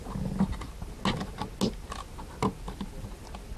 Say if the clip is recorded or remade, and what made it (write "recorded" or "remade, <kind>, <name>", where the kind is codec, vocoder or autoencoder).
recorded